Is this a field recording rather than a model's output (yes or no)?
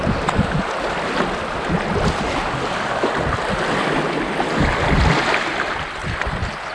yes